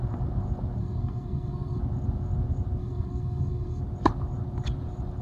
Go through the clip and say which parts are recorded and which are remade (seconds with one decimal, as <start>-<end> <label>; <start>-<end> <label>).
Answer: 0.0-0.8 recorded; 0.8-1.8 remade; 1.8-2.8 recorded; 2.8-3.8 remade; 3.8-5.2 recorded